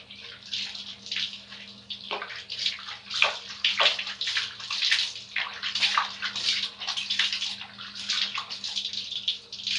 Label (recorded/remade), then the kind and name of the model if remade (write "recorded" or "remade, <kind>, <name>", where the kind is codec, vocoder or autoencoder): recorded